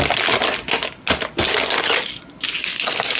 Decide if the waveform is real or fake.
real